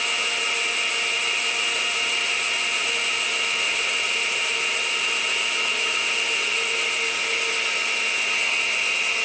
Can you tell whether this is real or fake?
real